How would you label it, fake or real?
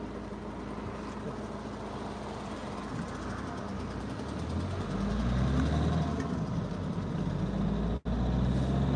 real